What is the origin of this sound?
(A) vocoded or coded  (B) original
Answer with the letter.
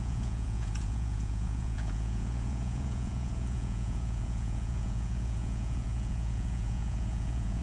A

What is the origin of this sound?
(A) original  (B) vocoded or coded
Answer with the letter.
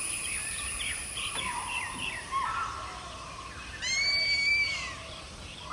B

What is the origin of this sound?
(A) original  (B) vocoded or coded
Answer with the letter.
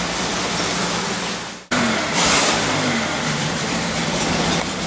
B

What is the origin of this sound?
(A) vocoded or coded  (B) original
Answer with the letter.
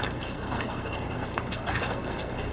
A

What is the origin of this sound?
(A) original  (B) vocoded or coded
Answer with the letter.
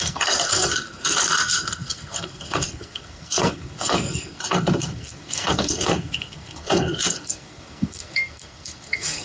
B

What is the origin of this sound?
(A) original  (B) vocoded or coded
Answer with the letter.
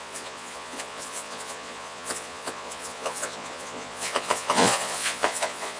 B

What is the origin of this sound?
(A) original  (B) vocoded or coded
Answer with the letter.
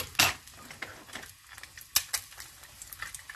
A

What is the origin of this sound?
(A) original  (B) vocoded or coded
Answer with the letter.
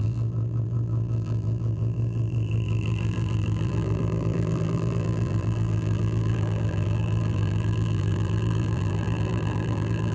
B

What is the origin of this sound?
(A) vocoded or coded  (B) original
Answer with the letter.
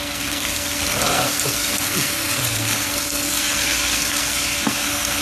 A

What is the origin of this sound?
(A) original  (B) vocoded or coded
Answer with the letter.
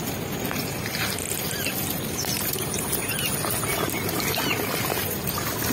A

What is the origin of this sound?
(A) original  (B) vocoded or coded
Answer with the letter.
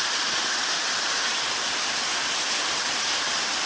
A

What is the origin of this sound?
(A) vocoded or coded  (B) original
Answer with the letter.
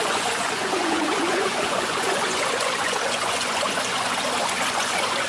A